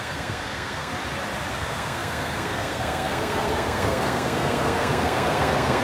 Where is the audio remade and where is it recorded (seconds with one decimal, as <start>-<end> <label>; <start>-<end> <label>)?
0.0-0.9 remade; 0.9-1.5 recorded; 1.5-5.8 remade